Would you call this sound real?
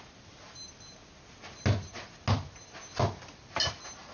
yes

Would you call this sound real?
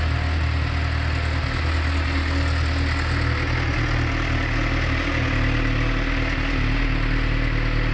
yes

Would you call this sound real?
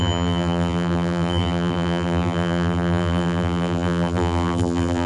no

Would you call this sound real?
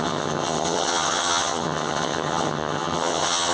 no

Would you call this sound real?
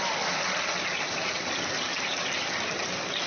yes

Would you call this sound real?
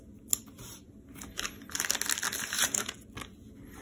yes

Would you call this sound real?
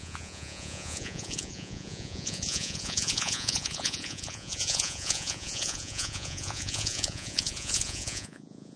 no